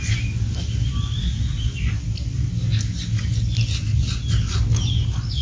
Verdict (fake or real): real